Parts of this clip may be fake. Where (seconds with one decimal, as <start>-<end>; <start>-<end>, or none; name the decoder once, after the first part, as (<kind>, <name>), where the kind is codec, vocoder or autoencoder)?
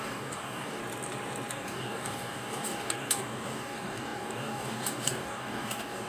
0.0-0.8 (codec, DAC); 1.5-6.1